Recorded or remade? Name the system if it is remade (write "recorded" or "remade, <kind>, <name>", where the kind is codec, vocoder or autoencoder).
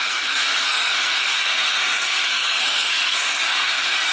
remade, codec, SNAC